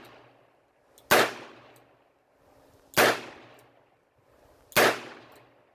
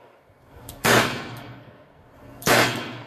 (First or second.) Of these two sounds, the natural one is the first